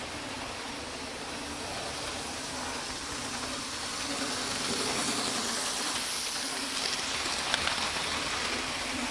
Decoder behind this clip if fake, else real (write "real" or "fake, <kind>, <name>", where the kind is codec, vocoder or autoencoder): real